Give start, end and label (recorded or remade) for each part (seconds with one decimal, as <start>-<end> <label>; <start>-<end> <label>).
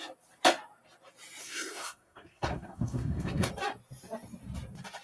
0.0-1.4 recorded; 1.4-3.5 remade; 3.5-5.0 recorded